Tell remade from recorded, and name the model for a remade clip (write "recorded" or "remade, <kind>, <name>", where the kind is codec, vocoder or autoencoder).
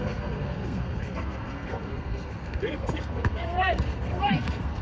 remade, codec, SNAC